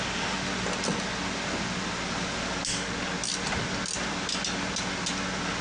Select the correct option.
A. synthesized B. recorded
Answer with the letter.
B